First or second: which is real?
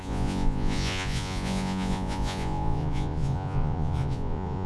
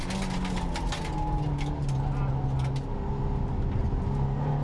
second